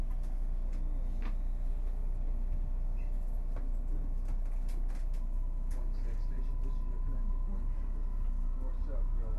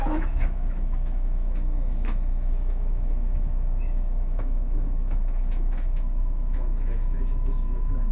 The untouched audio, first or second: first